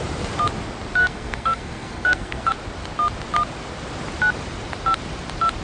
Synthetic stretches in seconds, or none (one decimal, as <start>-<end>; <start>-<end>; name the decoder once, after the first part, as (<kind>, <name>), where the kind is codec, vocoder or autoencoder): 1.0-2.5 (codec, SNAC)